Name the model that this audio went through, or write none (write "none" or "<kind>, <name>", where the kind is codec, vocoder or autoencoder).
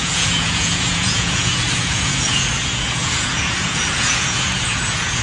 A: vocoder, Vocos